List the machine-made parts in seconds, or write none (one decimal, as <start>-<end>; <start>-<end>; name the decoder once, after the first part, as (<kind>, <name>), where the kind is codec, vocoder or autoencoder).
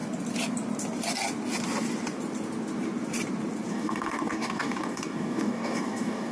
3.7-6.3 (codec, DAC)